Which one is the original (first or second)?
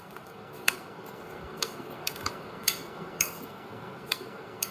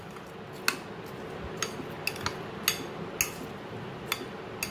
second